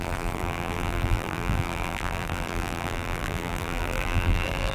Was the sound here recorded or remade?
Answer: remade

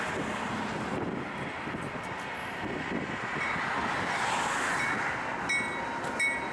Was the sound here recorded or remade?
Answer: recorded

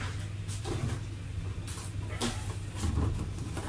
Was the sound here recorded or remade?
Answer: remade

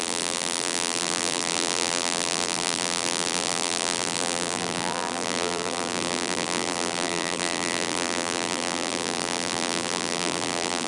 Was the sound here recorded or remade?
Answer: remade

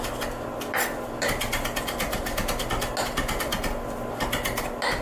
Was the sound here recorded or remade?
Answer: recorded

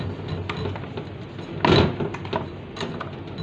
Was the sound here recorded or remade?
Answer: recorded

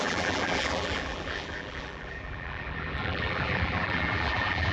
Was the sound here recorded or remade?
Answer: remade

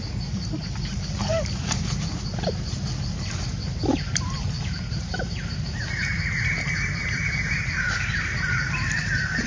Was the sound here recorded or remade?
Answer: remade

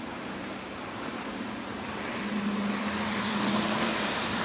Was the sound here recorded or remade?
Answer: remade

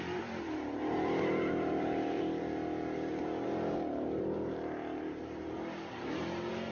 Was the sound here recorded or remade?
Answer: remade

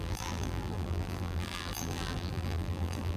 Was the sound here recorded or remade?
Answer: remade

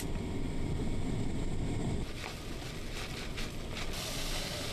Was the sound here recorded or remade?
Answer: recorded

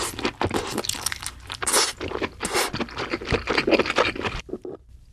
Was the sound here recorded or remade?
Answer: recorded